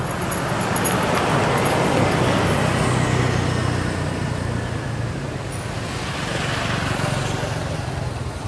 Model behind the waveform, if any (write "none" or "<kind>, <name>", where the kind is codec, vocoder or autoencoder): none